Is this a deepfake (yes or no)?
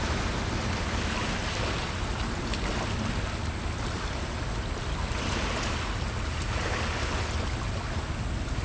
no